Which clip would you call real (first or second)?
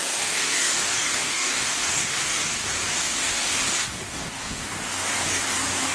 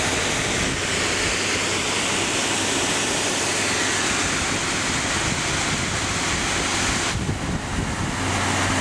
second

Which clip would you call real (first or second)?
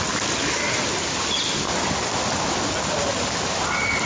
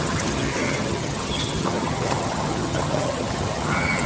first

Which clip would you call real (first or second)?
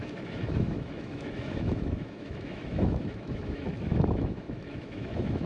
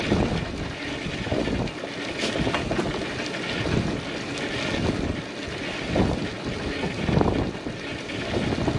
second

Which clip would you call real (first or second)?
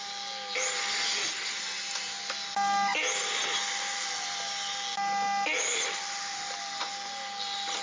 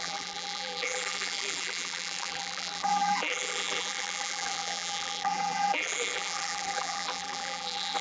first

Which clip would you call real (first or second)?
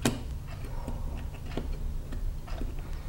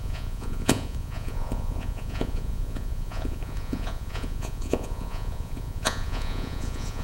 first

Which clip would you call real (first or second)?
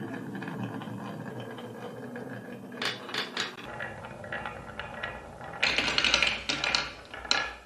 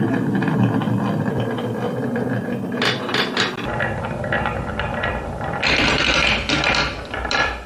first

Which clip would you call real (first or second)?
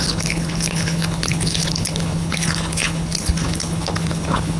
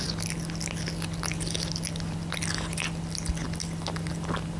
second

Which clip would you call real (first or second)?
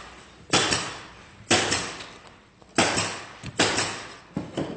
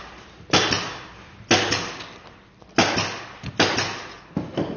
second